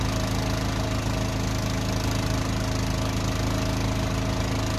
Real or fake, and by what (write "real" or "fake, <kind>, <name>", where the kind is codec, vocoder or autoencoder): real